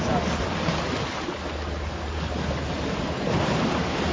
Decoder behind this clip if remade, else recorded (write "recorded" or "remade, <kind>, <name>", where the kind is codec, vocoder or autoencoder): recorded